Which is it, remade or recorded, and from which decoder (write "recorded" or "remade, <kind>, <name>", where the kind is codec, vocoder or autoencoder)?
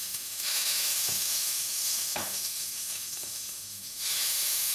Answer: remade, autoencoder, DAC-VAE